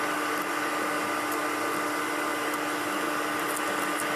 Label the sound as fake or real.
real